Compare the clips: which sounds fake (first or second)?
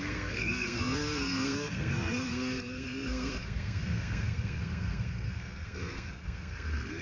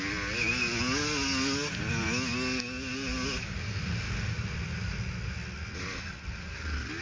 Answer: first